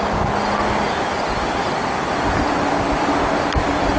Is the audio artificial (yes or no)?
no